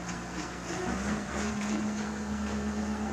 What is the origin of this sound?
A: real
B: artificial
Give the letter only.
B